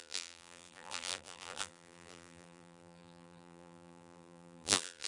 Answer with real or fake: fake